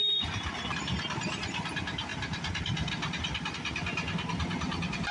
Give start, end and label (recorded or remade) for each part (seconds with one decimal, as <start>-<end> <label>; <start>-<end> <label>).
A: 0.0-5.1 recorded